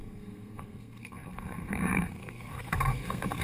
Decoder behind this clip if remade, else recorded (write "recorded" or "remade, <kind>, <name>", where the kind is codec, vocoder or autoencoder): remade, codec, SNAC